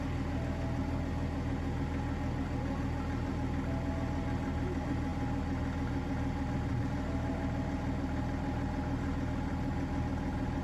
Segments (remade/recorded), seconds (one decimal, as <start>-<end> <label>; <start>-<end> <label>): 0.0-10.6 recorded